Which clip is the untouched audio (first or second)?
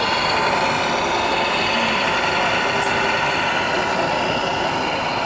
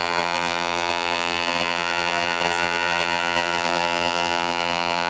first